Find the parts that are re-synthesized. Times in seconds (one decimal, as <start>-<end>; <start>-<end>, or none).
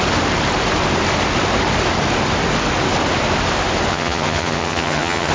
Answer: 3.9-5.3